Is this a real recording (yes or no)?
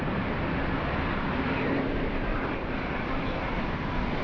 no